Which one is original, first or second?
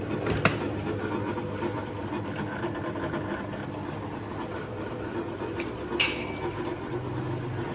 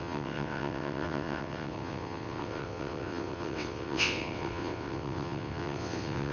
first